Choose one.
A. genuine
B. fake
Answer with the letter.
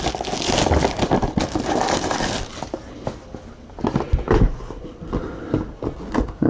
A